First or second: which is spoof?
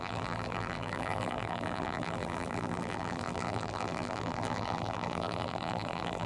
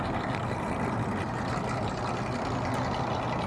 first